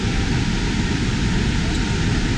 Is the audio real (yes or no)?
yes